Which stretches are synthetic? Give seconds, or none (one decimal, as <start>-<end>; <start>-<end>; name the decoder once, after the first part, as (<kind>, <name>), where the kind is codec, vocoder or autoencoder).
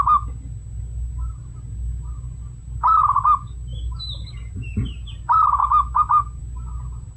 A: none